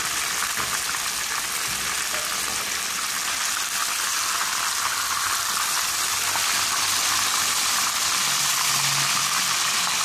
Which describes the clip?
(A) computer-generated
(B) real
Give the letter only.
B